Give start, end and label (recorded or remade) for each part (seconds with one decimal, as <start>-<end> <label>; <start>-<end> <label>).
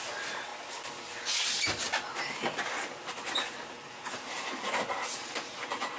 0.0-6.0 recorded